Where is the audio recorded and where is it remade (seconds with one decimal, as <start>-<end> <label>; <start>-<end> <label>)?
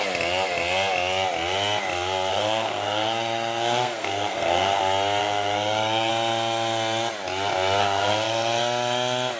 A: 0.0-2.3 recorded; 2.3-4.8 remade; 4.8-5.2 recorded; 5.2-6.1 remade; 6.1-7.8 recorded; 7.8-8.6 remade; 8.6-9.4 recorded